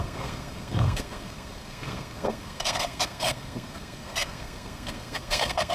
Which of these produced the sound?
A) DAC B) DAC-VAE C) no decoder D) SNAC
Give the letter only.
D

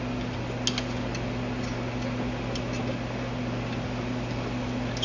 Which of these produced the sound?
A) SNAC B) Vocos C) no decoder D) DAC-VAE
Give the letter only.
C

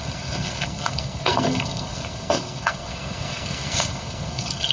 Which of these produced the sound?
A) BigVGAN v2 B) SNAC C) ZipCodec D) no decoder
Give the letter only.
B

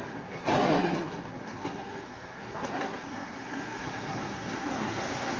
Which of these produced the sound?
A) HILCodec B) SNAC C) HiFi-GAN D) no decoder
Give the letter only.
B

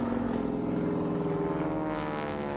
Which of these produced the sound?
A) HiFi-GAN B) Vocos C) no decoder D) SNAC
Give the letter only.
C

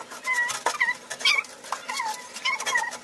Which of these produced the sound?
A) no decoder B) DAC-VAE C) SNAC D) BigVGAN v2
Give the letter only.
A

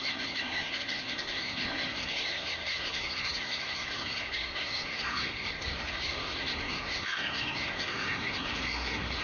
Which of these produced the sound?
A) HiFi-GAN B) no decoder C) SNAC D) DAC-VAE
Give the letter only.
C